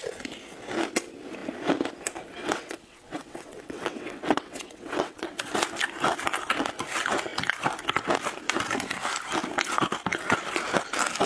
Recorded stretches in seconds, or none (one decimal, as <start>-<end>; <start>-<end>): 0.0-2.4; 5.5-11.3